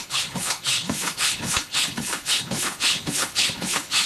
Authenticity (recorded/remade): remade